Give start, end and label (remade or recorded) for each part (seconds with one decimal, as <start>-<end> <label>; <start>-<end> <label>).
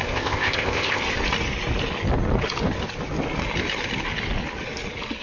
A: 0.0-1.0 remade; 1.0-5.2 recorded